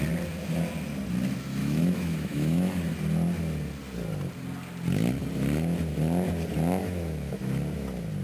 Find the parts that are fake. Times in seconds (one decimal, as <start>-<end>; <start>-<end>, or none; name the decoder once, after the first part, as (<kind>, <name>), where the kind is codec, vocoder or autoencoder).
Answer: 1.6-2.8 (autoencoder, DAC-VAE); 6.8-7.4

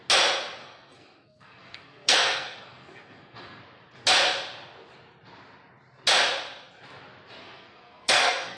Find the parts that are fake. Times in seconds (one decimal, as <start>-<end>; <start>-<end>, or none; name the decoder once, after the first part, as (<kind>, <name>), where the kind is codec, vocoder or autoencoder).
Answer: 0.6-3.6 (codec, SNAC); 7.4-8.6